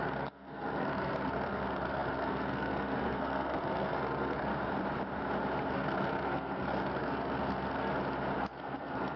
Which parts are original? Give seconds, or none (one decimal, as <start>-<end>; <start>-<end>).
4.5-5.7; 7.9-8.4